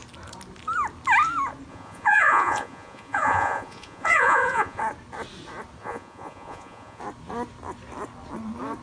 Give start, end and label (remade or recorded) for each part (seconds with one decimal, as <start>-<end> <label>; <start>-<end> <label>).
0.0-1.7 recorded; 1.7-4.8 remade; 4.8-5.8 recorded; 5.8-7.0 remade; 7.0-8.8 recorded

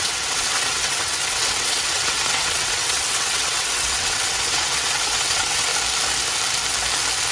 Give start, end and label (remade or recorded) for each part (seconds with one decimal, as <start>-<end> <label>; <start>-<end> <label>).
0.0-5.7 remade; 5.7-7.3 recorded